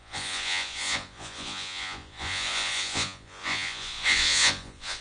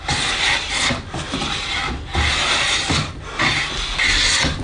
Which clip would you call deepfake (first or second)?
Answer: first